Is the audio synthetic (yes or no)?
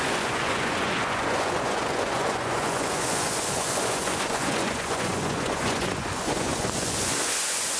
yes